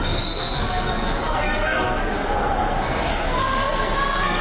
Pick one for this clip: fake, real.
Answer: fake